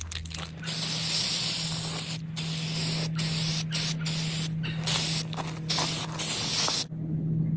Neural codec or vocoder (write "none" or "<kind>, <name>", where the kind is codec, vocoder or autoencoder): none